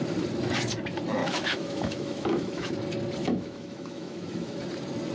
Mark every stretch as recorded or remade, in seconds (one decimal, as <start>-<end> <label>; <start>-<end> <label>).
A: 0.0-1.2 recorded; 1.2-2.7 remade; 2.7-3.2 recorded; 3.2-4.6 remade; 4.6-5.1 recorded